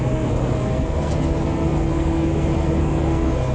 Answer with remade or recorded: remade